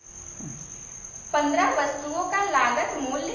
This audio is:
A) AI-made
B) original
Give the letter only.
B